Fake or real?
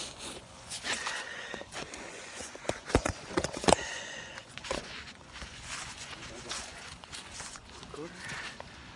fake